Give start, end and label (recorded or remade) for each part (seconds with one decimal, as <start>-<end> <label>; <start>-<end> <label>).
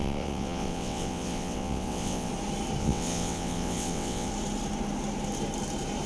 0.0-2.3 remade; 2.3-2.8 recorded; 2.8-4.3 remade; 4.3-6.1 recorded